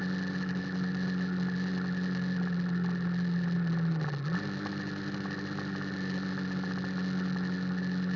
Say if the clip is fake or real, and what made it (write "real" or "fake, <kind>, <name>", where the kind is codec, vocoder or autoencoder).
real